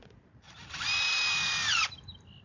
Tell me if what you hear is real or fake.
real